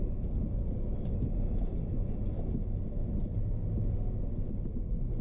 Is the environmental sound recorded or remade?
recorded